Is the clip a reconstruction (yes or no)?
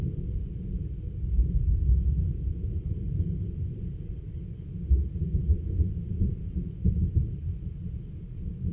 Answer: no